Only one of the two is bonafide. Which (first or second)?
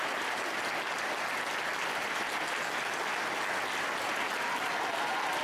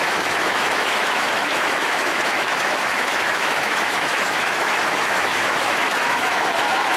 first